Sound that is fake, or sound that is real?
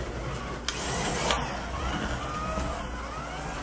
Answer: real